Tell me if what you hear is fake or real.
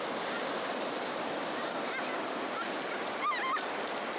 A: real